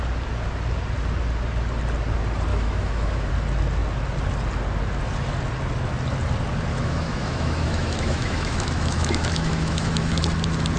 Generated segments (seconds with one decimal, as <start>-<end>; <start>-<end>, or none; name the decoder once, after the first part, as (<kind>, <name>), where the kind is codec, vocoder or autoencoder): 2.5-3.3 (autoencoder, DAC-VAE); 6.7-10.3